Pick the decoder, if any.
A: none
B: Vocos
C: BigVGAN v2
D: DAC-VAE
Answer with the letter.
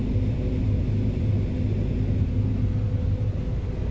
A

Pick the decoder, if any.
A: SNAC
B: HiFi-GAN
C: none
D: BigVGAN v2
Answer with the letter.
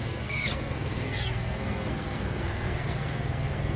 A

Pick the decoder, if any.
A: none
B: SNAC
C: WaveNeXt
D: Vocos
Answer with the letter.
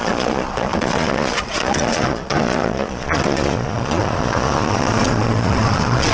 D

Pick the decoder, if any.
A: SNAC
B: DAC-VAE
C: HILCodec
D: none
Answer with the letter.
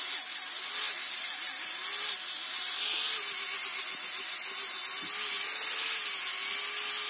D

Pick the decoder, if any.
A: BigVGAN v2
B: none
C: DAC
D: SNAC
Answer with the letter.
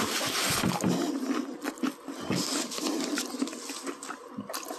B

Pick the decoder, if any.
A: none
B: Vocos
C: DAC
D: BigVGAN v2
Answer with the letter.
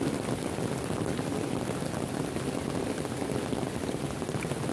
A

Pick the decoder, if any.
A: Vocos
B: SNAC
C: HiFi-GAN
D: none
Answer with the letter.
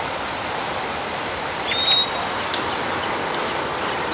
D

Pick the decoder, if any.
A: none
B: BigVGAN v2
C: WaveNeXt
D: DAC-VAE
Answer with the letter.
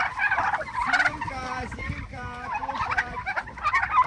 B